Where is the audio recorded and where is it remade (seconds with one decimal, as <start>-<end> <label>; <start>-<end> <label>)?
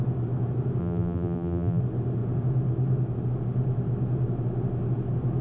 0.0-0.8 recorded; 0.8-1.8 remade; 1.8-5.4 recorded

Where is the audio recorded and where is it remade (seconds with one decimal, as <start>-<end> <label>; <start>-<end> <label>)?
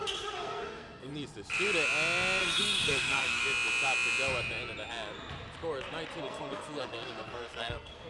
0.0-1.1 remade; 1.1-2.4 recorded; 2.4-3.4 remade; 3.4-6.2 recorded; 6.2-8.1 remade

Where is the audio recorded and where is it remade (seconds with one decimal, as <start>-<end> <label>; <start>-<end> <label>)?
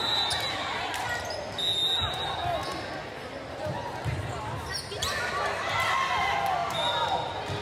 0.0-7.6 recorded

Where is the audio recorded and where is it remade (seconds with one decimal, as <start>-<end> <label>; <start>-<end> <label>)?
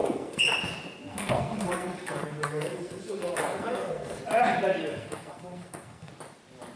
0.0-0.5 remade; 0.5-1.1 recorded; 1.1-4.2 remade; 4.2-4.8 recorded; 4.8-6.1 remade; 6.1-6.8 recorded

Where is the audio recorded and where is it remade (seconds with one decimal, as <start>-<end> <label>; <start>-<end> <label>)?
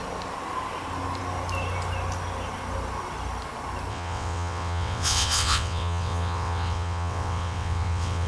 0.0-3.9 recorded; 3.9-8.3 remade